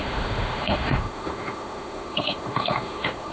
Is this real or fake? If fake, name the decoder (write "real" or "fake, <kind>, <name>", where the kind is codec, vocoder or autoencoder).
fake, autoencoder, DAC-VAE